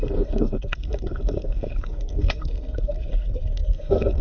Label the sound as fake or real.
fake